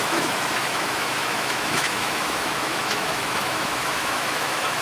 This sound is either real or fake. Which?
fake